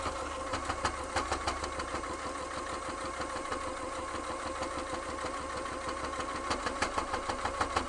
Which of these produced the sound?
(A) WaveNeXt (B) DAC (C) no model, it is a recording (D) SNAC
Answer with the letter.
C